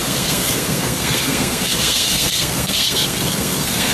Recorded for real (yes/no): no